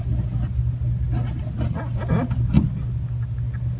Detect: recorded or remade recorded